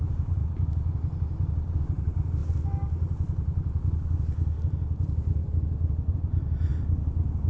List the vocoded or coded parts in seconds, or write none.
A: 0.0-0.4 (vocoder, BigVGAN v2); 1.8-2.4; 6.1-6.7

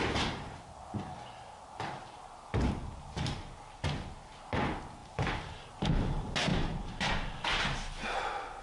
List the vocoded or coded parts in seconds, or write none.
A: 5.0-5.6 (vocoder, BigVGAN v2); 6.5-7.1

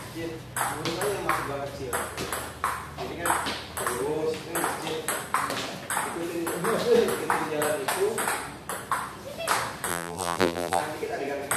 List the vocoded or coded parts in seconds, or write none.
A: 9.9-10.8 (vocoder, BigVGAN v2)

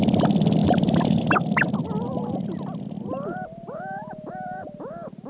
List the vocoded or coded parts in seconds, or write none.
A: 0.6-1.2 (vocoder, BigVGAN v2)

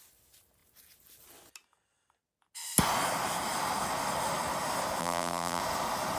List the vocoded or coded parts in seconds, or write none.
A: 5.0-5.6 (vocoder, BigVGAN v2)

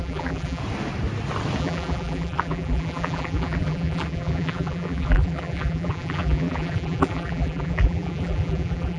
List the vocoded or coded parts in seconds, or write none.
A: 0.0-0.6 (vocoder, BigVGAN v2); 1.6-9.0

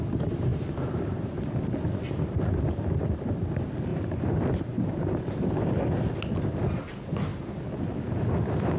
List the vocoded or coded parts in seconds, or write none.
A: 0.5-1.7 (vocoder, BigVGAN v2); 3.9-5.7